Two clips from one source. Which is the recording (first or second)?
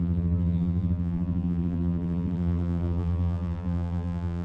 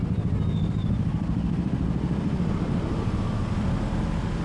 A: second